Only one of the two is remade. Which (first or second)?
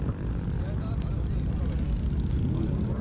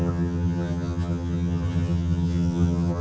second